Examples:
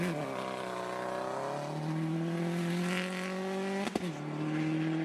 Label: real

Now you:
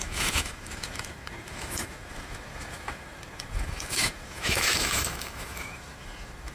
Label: fake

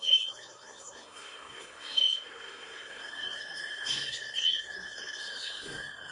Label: fake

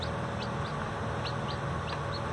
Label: real